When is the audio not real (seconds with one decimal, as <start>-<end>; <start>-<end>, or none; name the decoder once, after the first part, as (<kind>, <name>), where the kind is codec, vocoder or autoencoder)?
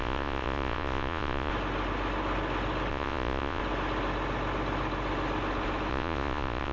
0.0-1.5 (vocoder, Vocos); 2.9-3.6; 5.9-6.7